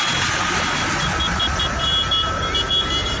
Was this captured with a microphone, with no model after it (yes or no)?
yes